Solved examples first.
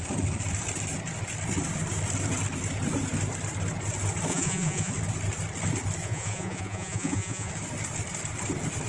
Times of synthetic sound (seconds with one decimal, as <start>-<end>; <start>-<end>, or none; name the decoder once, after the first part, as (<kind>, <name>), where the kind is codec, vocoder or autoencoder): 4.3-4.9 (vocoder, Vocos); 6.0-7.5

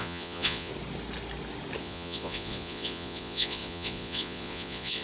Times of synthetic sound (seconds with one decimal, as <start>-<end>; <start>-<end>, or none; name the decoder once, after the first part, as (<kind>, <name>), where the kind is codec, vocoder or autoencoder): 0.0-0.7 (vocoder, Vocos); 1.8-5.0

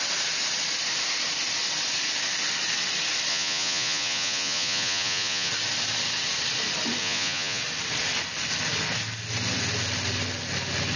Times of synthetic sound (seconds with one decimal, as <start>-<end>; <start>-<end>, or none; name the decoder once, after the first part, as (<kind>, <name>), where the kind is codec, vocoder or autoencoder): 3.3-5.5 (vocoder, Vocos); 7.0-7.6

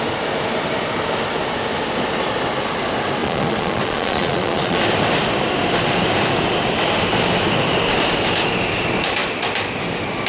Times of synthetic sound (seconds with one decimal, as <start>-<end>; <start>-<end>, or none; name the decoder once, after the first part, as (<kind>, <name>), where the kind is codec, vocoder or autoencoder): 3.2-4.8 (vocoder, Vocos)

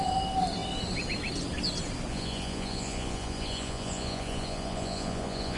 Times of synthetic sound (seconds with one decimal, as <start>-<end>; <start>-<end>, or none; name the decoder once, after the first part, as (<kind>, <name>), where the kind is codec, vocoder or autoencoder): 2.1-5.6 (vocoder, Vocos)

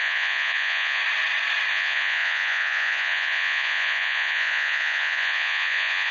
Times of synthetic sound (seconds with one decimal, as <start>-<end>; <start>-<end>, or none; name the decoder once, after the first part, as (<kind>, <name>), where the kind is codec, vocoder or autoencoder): 0.0-1.0 (vocoder, Vocos); 1.7-6.1

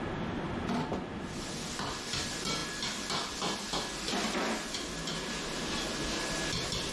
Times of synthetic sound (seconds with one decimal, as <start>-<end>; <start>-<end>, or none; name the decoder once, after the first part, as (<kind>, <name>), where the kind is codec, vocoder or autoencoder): none

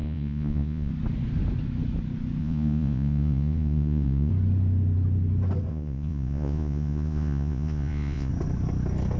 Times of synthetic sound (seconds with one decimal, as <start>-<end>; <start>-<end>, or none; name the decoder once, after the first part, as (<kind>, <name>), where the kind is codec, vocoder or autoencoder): 0.0-0.9 (vocoder, Vocos); 2.4-4.3; 5.7-8.3